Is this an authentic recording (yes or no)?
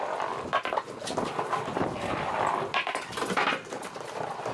yes